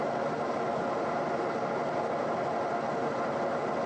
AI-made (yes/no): no